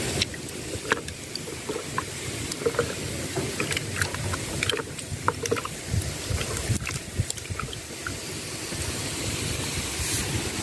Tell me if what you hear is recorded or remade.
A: recorded